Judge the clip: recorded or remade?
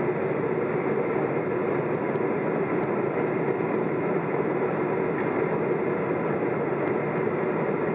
recorded